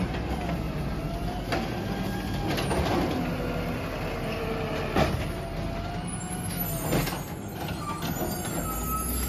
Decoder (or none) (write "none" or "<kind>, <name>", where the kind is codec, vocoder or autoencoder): none